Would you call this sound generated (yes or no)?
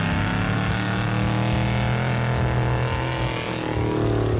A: no